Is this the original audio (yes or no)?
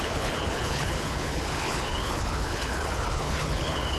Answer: no